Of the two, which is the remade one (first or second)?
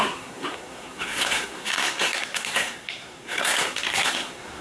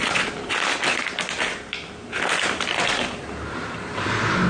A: first